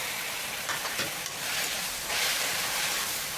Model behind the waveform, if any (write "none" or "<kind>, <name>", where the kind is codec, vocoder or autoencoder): vocoder, BigVGAN v2